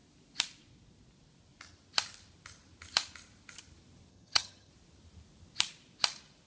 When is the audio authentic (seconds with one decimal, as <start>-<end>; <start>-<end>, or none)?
0.0-4.1; 4.7-6.5